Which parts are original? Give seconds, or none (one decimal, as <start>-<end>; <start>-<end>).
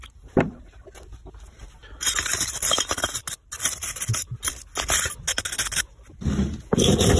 0.0-7.2